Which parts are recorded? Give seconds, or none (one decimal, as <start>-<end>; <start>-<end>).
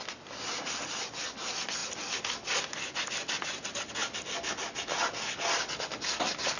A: 0.0-6.6